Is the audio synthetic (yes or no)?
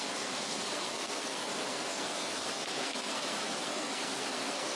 yes